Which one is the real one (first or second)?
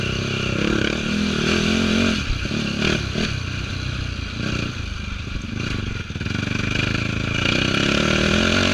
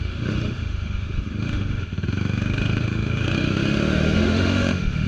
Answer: first